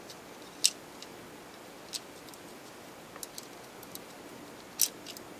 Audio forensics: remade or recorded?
recorded